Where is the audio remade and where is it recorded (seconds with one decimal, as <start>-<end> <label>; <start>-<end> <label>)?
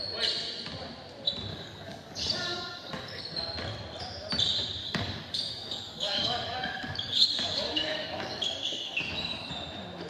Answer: 0.0-1.5 recorded; 1.5-3.2 remade; 3.2-4.8 recorded; 4.8-9.5 remade; 9.5-10.1 recorded